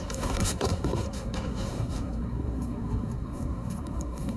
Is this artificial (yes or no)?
yes